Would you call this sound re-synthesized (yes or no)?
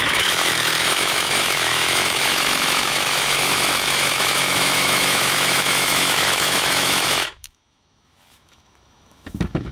yes